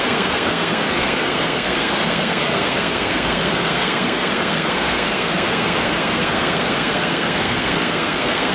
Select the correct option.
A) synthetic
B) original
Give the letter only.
A